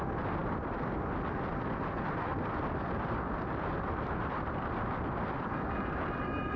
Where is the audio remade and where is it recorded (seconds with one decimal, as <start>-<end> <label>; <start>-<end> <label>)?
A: 0.0-0.4 recorded; 0.4-0.9 remade; 0.9-2.3 recorded; 2.3-6.6 remade

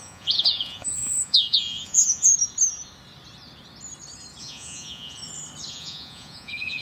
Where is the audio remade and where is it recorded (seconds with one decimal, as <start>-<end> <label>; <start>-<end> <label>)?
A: 0.0-2.3 remade; 2.3-4.4 recorded; 4.4-5.2 remade; 5.2-5.7 recorded; 5.7-6.8 remade